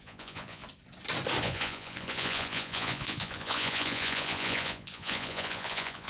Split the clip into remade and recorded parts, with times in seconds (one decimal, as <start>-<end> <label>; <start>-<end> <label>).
0.0-0.6 remade; 0.6-1.4 recorded; 1.4-6.1 remade